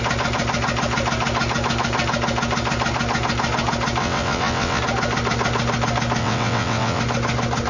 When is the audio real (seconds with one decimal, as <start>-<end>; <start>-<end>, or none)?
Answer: 0.0-4.0; 4.8-6.2; 7.0-7.7